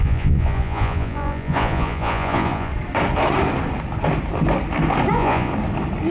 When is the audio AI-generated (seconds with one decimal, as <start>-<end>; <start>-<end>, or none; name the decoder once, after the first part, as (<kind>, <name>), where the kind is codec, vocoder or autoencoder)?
0.0-2.7 (vocoder, Vocos); 5.1-5.5